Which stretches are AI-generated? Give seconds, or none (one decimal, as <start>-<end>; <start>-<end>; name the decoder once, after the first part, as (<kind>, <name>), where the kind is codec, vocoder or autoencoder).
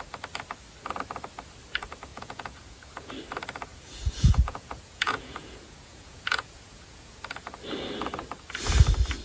2.1-3.1 (vocoder, Vocos); 3.7-7.2